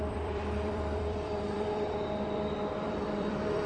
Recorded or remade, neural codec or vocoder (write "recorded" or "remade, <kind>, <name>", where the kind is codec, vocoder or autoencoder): remade, vocoder, BigVGAN v2